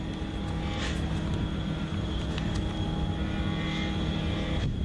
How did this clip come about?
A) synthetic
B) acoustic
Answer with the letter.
B